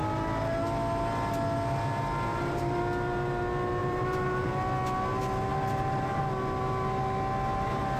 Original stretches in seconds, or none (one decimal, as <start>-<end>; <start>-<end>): 0.0-2.3; 2.8-3.8; 4.5-5.5; 6.2-8.0